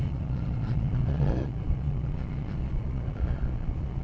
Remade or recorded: remade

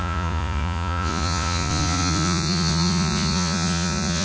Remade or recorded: remade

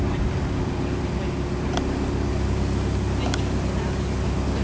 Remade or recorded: recorded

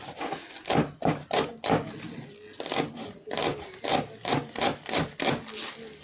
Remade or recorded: recorded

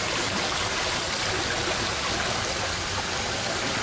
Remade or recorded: recorded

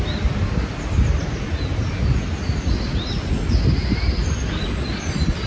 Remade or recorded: recorded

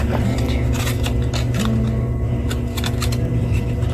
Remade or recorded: recorded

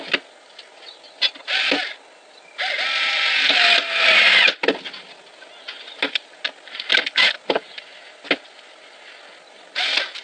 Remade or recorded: recorded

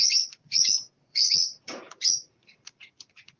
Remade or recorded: remade